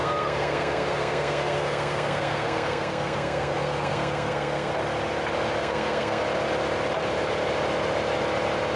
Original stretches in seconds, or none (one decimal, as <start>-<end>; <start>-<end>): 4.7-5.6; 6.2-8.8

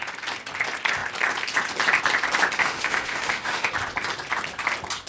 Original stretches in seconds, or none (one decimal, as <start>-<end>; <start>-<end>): 0.0-2.6; 3.7-5.1

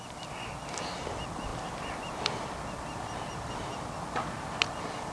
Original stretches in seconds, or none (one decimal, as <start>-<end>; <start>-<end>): 0.0-5.1